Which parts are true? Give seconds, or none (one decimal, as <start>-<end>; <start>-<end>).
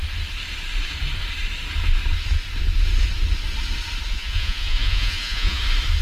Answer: 0.0-4.1; 5.6-6.0